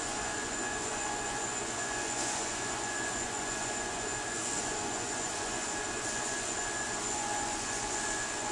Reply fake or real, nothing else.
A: fake